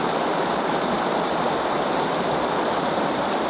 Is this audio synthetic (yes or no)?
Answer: no